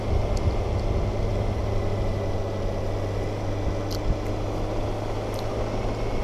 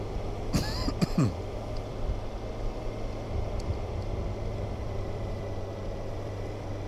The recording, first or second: first